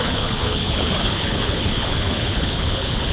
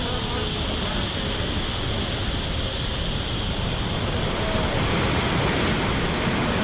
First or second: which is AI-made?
first